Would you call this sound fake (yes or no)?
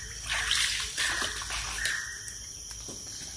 no